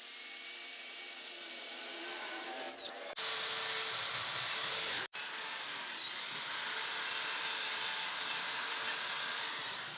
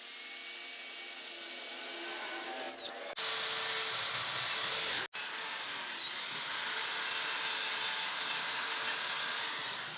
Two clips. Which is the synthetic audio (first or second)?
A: first